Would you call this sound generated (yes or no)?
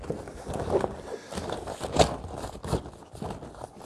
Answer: no